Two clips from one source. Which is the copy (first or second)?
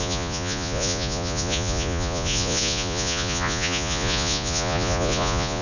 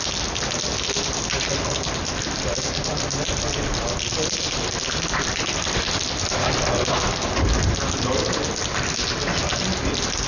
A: first